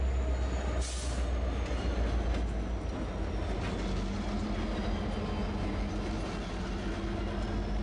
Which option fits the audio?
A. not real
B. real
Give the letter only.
B